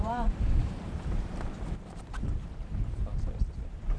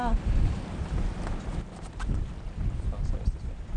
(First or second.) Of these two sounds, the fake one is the first